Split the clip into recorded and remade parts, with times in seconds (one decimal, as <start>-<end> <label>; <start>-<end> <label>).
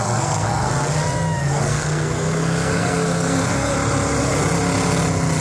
0.0-0.7 remade; 0.7-1.4 recorded; 1.4-3.7 remade; 3.7-5.4 recorded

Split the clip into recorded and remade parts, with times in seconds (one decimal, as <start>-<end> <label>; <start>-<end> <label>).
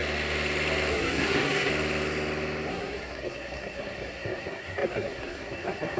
0.0-0.9 recorded; 0.9-1.7 remade; 1.7-2.7 recorded; 2.7-6.0 remade